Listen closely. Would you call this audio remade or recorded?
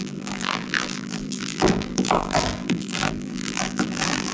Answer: remade